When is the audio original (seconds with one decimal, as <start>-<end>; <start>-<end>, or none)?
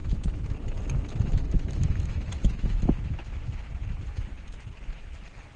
0.5-1.3; 3.7-5.6